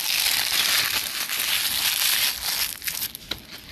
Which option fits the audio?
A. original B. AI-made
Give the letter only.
A